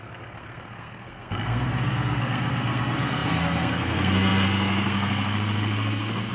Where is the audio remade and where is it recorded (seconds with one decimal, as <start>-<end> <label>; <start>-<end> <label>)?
0.0-6.3 remade